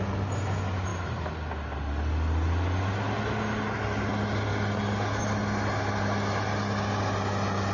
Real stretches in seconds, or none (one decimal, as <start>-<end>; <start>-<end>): 0.0-7.7